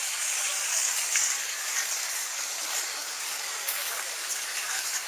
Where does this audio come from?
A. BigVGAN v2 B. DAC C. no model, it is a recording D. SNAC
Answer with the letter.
B